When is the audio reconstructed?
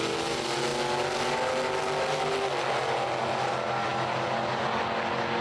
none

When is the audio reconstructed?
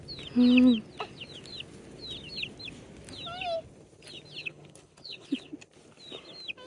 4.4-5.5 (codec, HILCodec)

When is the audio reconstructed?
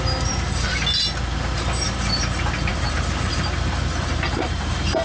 0.0-0.7 (vocoder, BigVGAN v2); 1.5-5.0